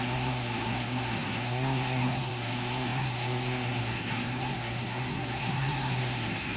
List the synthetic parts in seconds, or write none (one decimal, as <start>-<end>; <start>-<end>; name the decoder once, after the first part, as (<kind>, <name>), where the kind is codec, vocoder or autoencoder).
0.0-6.6 (codec, SNAC)